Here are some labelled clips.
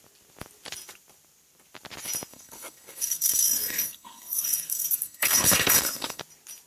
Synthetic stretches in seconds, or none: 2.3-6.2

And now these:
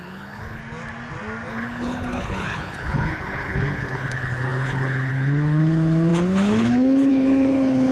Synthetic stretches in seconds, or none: 0.0-0.6; 1.5-7.9

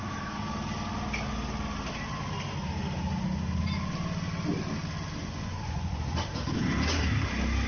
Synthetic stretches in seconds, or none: 5.2-6.0

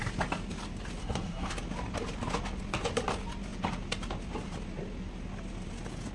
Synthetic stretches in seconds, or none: 1.0-1.5

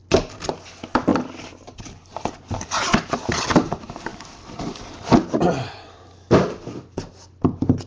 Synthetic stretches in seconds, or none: 1.1-1.9; 4.1-6.7

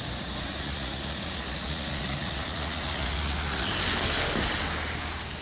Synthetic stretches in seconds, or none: 0.5-3.7

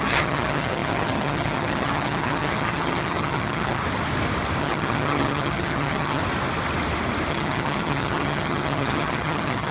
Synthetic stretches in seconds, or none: 0.0-3.8; 4.6-6.2; 7.3-9.7

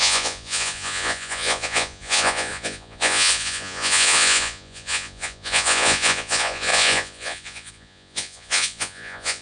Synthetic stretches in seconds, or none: 0.0-9.4